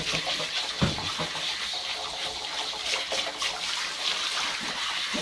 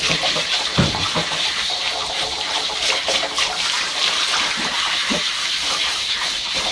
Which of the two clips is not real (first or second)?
second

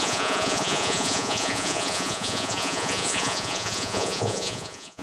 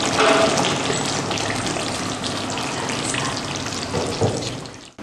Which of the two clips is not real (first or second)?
first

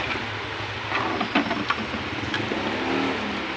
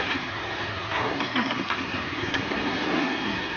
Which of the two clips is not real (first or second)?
second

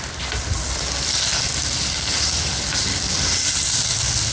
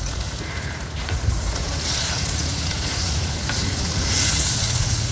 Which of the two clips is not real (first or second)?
second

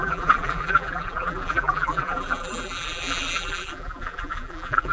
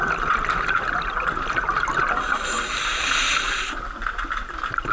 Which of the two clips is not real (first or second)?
first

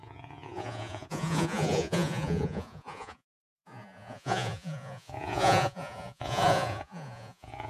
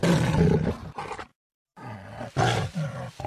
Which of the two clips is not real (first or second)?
first